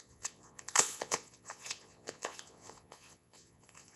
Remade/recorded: remade